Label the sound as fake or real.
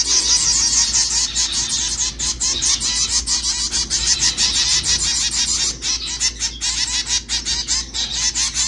real